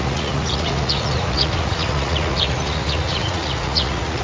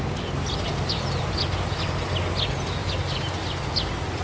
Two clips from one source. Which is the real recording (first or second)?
second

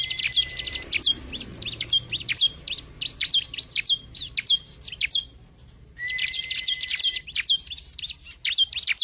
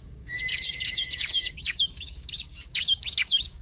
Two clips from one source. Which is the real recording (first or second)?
first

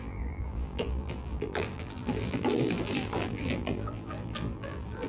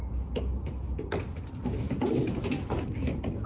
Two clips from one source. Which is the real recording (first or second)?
second